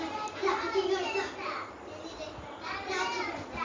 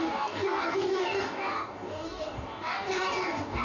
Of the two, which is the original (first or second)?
first